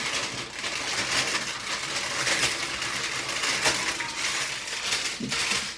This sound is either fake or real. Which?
real